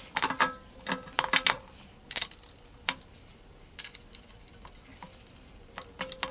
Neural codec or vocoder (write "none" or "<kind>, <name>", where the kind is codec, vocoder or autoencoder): none